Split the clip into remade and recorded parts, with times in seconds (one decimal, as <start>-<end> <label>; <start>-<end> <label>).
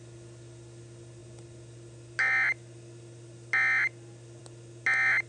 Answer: 0.0-5.3 recorded